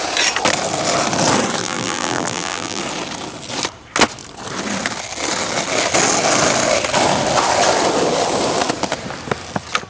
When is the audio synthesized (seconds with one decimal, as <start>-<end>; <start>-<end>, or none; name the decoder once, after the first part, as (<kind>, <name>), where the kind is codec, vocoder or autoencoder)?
1.6-2.8 (vocoder, BigVGAN v2)